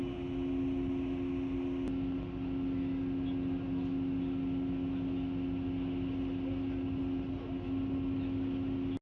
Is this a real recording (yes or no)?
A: yes